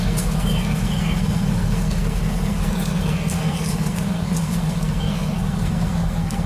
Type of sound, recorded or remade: remade